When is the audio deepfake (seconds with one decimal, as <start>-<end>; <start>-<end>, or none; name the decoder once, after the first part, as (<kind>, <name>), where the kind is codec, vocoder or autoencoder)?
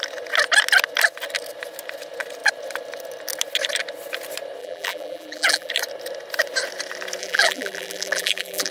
4.6-5.7 (vocoder, BigVGAN v2); 7.2-8.7